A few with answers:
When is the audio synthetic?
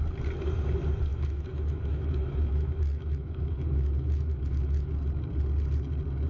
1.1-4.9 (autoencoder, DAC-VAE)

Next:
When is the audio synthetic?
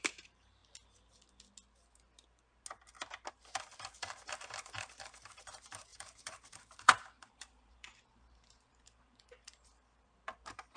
0.0-0.6 (vocoder, BigVGAN v2); 3.3-10.8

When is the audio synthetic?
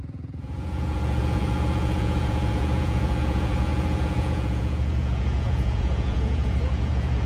0.0-7.3 (vocoder, Vocos)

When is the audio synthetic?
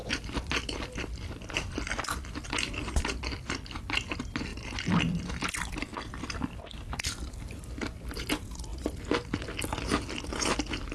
0.0-1.5 (vocoder, BigVGAN v2)